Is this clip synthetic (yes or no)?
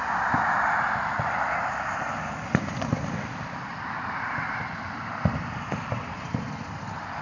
yes